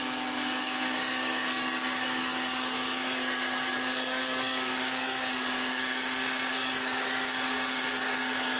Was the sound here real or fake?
fake